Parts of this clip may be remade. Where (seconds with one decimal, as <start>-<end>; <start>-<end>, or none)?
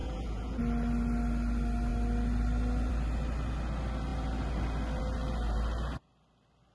0.0-0.6